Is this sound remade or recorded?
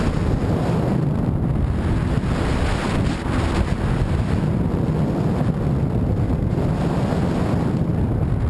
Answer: recorded